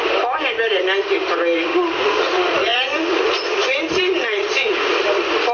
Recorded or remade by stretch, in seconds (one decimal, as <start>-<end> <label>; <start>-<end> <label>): 0.0-1.7 recorded; 1.7-5.0 remade; 5.0-5.5 recorded